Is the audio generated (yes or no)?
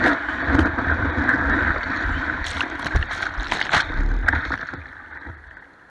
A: yes